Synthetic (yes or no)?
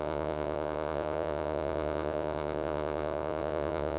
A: yes